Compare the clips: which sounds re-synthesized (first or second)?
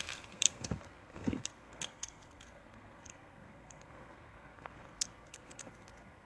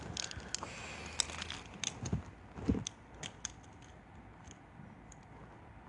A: first